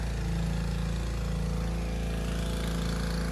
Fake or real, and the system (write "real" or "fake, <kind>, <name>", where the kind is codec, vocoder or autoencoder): real